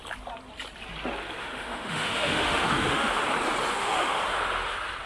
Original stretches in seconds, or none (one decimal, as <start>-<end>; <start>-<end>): 0.0-1.4; 3.2-3.7; 4.2-5.1